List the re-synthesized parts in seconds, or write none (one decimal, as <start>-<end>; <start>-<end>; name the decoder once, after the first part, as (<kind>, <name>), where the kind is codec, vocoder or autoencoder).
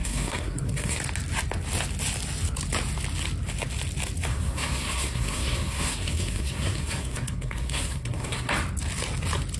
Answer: 0.0-1.0 (codec, SNAC); 4.3-8.5